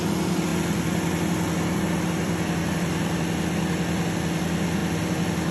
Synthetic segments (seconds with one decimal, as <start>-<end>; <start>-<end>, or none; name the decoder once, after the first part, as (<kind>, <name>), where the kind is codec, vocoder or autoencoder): none